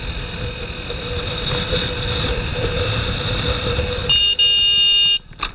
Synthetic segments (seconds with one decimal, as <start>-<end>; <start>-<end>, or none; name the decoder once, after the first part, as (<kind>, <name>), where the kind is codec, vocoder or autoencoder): 2.5-3.8 (vocoder, BigVGAN v2)